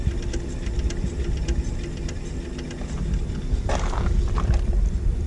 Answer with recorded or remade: recorded